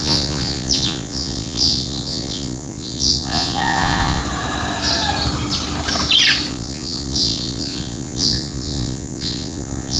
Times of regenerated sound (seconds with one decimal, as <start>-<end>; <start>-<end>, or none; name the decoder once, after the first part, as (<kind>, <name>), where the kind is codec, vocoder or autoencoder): 0.0-4.2 (vocoder, Vocos); 6.5-10.0